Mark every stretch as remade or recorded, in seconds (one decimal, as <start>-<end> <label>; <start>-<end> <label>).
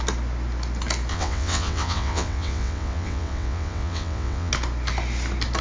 0.0-1.1 recorded; 1.1-4.5 remade; 4.5-5.6 recorded